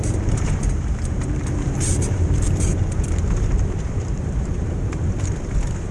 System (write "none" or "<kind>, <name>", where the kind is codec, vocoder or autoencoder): vocoder, BigVGAN v2